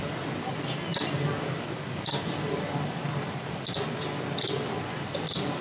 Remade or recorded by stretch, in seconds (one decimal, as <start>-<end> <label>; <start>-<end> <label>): 0.0-5.6 recorded